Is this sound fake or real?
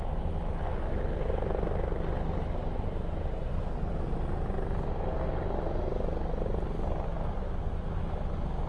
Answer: real